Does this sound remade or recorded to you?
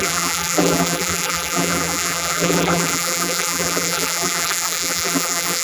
remade